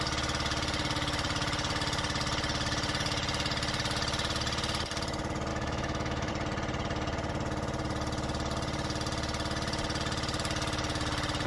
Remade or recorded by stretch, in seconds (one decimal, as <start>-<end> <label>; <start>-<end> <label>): 0.0-5.5 recorded; 5.5-6.3 remade; 6.3-11.5 recorded